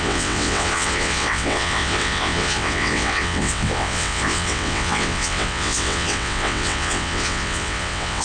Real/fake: fake